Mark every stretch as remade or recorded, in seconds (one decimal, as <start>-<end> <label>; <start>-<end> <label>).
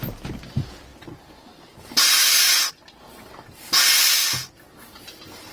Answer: 0.0-5.5 recorded